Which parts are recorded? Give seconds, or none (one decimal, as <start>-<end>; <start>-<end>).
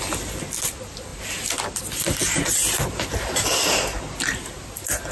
0.0-5.1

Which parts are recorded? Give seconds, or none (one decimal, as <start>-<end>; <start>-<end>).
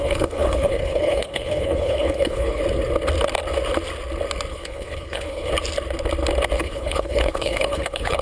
2.6-4.5; 5.5-6.6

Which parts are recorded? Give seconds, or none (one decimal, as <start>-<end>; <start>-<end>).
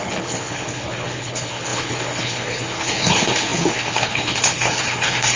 none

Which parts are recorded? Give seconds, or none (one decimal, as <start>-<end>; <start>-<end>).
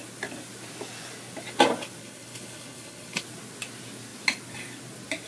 0.0-2.0; 3.2-5.3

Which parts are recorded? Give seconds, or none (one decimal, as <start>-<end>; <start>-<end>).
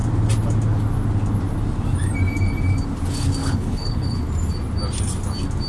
0.0-3.4; 4.2-5.7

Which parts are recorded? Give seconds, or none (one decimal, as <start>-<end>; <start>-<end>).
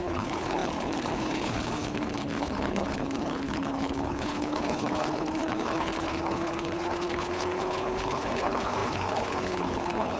none